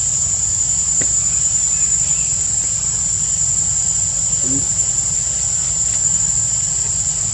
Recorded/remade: recorded